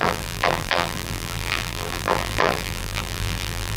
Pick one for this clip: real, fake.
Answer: fake